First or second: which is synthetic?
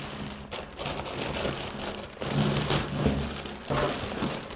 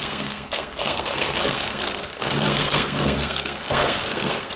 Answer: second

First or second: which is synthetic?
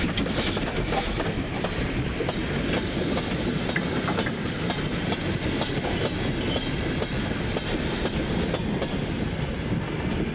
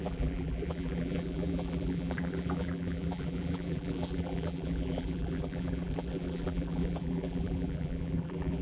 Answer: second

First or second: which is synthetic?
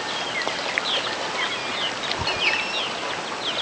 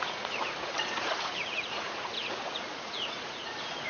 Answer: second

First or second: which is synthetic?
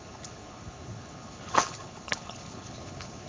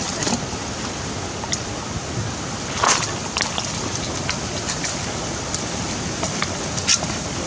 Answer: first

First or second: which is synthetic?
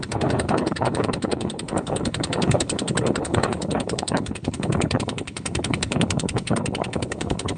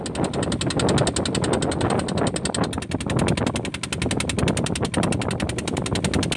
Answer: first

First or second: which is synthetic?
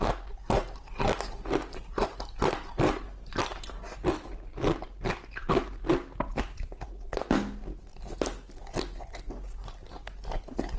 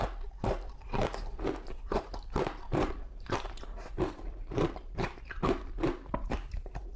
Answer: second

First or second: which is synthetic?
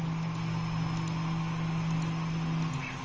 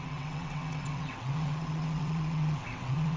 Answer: second